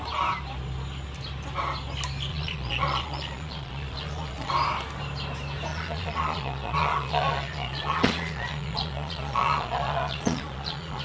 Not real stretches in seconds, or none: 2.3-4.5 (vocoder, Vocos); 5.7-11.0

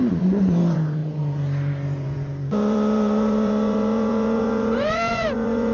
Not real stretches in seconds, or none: 0.0-5.7 (vocoder, Vocos)

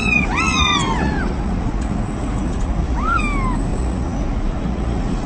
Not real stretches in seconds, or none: 0.0-3.2 (vocoder, Vocos); 3.7-5.3

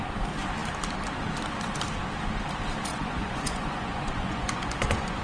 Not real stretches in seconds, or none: 2.9-5.2 (vocoder, Vocos)